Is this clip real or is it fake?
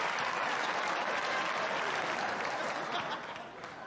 real